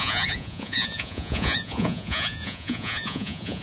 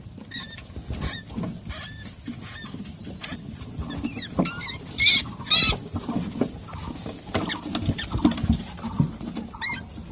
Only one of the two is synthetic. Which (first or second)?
first